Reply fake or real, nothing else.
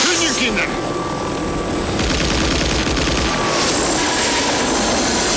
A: real